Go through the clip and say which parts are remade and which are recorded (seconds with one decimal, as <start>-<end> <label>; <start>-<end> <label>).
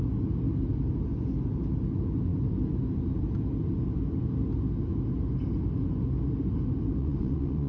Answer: 0.0-7.0 recorded; 7.0-7.7 remade